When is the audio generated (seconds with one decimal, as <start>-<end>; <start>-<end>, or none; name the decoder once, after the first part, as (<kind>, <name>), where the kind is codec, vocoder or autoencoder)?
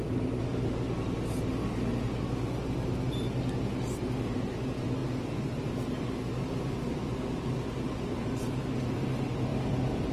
none